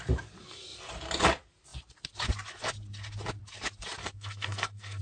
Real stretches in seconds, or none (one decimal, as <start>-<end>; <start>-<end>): 0.0-4.0